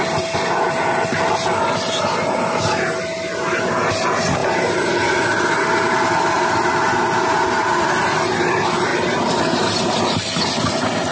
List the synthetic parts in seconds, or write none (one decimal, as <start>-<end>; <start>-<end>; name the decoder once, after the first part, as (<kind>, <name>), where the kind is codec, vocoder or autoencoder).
none

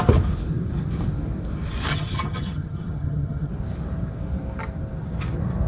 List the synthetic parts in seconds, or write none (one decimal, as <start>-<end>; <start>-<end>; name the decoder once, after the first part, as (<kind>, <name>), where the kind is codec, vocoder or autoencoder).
1.9-3.5 (vocoder, HiFi-GAN)

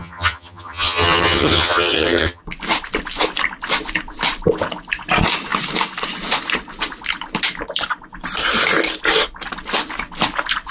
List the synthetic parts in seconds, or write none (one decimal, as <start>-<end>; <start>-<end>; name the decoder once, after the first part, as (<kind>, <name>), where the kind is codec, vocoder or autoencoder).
0.0-2.4 (vocoder, HiFi-GAN)

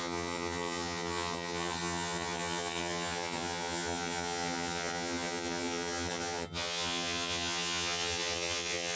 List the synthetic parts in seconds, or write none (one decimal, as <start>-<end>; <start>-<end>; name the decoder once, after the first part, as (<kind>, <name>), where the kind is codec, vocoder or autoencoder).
0.0-9.0 (vocoder, HiFi-GAN)

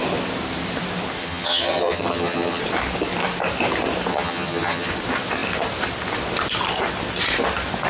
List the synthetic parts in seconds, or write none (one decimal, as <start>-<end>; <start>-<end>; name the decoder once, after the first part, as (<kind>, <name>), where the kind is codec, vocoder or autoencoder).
1.2-2.6 (vocoder, HiFi-GAN); 4.1-4.9

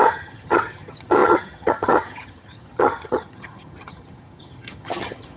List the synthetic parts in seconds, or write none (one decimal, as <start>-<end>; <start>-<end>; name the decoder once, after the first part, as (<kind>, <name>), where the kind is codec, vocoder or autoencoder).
0.0-5.4 (vocoder, HiFi-GAN)

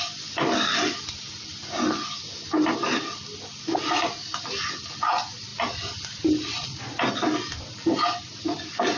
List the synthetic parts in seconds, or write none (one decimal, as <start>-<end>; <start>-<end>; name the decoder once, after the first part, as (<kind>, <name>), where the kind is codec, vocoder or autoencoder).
none